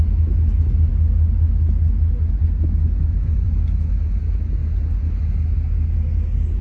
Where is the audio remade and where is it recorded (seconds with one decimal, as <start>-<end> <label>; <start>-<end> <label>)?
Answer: 0.0-3.1 recorded; 3.1-3.6 remade; 3.6-6.6 recorded